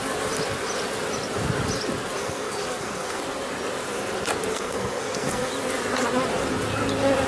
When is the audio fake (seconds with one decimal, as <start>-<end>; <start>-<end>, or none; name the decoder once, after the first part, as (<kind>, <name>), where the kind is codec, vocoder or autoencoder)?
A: 2.2-3.2 (codec, SNAC); 4.5-5.5